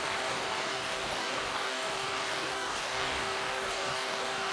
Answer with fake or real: fake